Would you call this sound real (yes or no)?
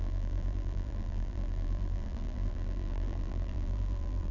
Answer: no